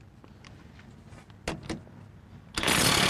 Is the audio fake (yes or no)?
no